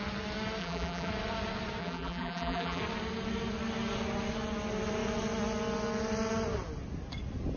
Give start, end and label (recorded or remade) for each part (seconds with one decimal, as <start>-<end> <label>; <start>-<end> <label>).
0.0-0.6 recorded; 0.6-1.1 remade; 1.1-1.8 recorded; 1.8-2.8 remade; 2.8-7.6 recorded